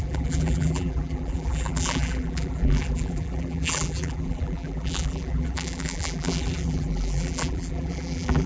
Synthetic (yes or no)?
yes